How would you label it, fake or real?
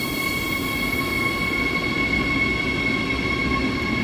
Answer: real